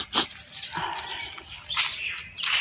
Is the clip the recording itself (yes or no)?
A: yes